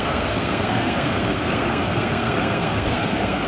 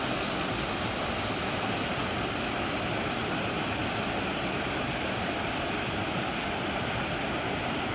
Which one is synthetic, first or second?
first